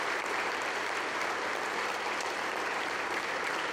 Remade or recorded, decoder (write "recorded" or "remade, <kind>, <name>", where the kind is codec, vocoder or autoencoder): remade, vocoder, BigVGAN v2